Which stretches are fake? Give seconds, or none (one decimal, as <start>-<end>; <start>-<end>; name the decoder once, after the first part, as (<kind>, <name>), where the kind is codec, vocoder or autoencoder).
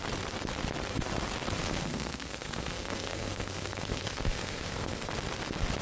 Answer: 1.6-5.1 (codec, SNAC)